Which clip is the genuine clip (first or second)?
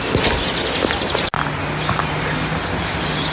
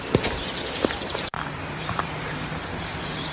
first